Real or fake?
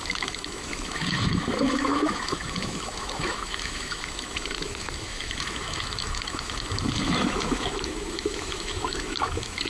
fake